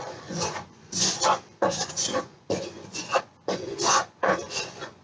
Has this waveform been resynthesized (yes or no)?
yes